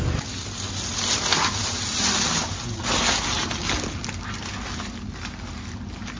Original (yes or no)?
yes